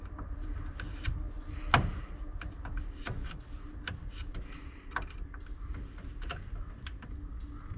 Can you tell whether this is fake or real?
real